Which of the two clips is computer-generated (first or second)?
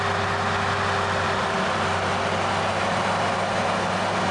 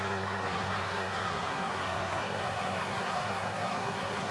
second